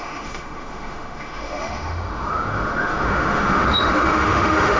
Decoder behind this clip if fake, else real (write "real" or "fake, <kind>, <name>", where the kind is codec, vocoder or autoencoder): fake, autoencoder, DAC-VAE